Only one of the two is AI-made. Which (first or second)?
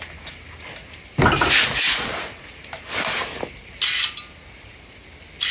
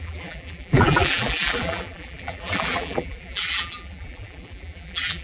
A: second